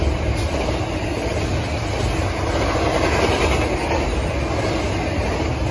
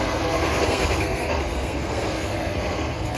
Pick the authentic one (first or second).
first